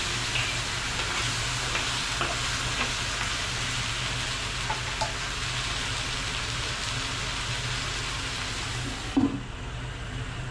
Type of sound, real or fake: real